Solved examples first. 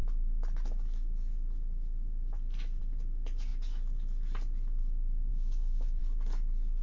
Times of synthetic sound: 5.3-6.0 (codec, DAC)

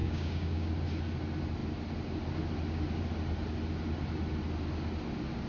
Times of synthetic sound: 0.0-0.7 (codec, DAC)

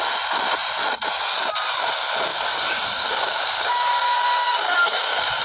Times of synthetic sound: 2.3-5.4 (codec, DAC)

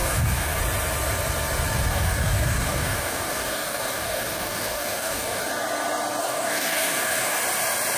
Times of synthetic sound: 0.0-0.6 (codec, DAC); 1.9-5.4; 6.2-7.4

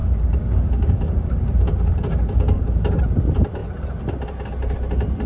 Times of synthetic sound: 0.0-3.0 (codec, DAC)

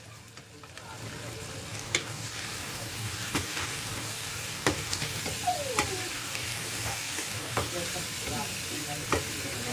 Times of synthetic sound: 1.7-5.2 (codec, DAC); 6.1-7.7